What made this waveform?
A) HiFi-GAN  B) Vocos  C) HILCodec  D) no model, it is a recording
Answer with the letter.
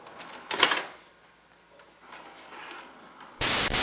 D